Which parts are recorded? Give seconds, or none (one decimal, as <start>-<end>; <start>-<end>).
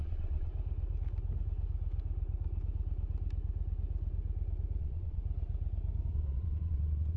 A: 0.5-4.8; 5.2-6.1